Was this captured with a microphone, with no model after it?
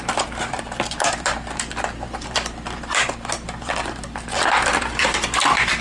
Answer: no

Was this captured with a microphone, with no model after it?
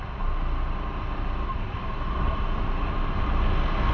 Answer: yes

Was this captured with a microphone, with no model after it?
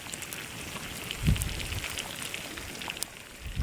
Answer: yes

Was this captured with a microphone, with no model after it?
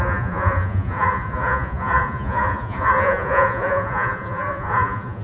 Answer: no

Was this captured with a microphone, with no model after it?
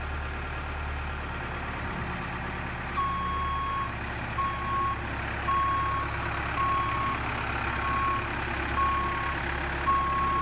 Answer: yes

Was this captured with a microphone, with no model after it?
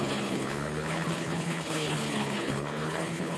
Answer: no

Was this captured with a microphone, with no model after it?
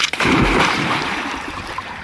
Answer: no